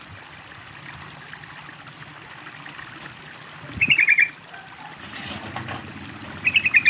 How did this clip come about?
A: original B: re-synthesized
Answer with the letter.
A